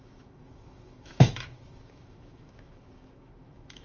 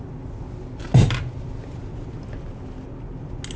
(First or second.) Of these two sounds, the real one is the second